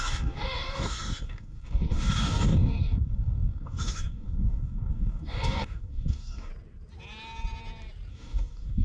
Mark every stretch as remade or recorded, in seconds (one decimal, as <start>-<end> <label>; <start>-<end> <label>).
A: 0.0-6.5 remade; 6.5-8.1 recorded; 8.1-8.8 remade